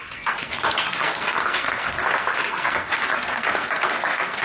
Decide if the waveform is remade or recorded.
remade